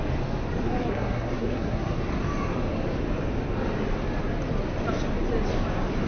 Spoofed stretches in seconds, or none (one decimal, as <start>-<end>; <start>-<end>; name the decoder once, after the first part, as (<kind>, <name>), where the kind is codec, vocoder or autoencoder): 0.9-2.0 (codec, SNAC)